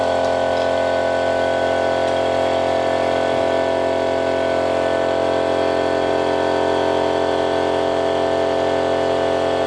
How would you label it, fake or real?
real